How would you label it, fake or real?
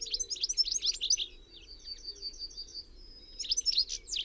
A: real